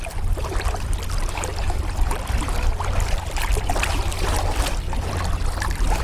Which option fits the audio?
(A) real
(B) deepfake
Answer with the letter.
A